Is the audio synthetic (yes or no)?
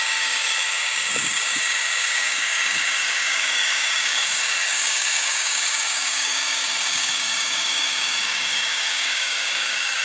yes